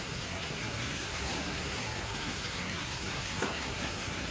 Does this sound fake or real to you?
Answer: fake